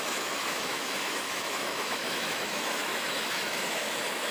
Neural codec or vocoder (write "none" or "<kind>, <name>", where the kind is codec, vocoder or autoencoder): autoencoder, DAC-VAE